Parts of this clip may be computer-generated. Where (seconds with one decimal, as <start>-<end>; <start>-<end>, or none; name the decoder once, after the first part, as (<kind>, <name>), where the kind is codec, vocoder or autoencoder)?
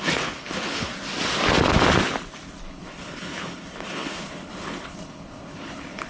0.0-0.9 (codec, HILCodec); 2.6-6.1